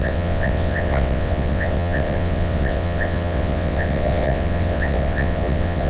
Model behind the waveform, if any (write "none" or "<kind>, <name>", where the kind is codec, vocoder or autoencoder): vocoder, WaveNeXt